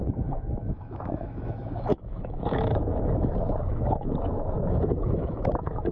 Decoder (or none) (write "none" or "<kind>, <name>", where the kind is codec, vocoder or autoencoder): autoencoder, DAC-VAE